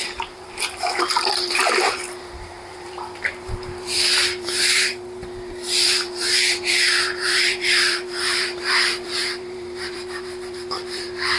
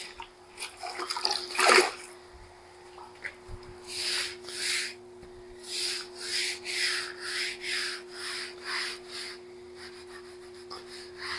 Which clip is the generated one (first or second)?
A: first